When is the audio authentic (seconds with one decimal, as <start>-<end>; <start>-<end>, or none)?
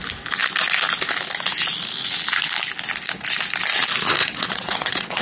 0.0-4.2